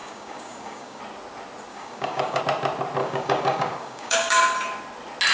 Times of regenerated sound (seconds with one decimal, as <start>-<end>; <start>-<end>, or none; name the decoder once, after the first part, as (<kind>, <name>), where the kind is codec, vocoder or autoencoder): 0.0-1.0 (codec, DAC); 1.7-2.4; 3.0-4.4